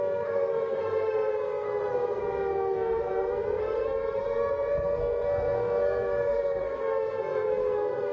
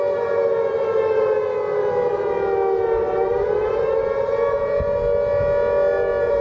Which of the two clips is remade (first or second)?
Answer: first